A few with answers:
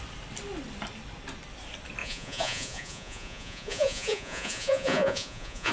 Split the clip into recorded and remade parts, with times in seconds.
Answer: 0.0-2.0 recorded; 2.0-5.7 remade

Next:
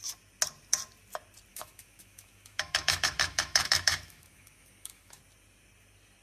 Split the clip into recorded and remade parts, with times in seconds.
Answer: 0.0-1.5 recorded; 1.5-5.2 remade; 5.2-6.2 recorded

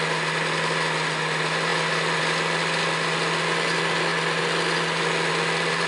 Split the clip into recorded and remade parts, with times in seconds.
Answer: 0.0-5.9 recorded

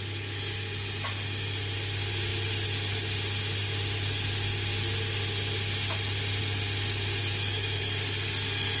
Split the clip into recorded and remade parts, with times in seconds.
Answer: 0.0-7.2 recorded; 7.2-7.8 remade; 7.8-8.8 recorded

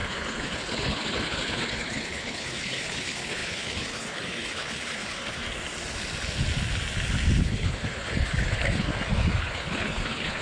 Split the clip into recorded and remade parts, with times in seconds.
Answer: 0.0-5.4 remade; 5.4-7.4 recorded; 7.4-8.9 remade; 8.9-9.4 recorded; 9.4-10.4 remade

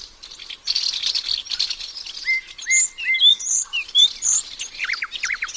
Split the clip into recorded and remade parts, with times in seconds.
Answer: 0.0-3.3 recorded; 3.3-4.4 remade; 4.4-5.6 recorded